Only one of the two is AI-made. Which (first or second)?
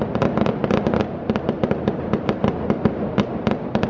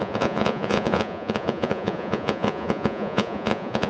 second